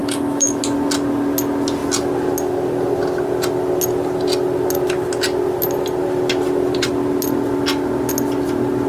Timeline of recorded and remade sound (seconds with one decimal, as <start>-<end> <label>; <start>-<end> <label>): 0.0-0.6 remade; 0.6-8.9 recorded